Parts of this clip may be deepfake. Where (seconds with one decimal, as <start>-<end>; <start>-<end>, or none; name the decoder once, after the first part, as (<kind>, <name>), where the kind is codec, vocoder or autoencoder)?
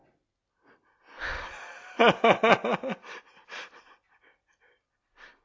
none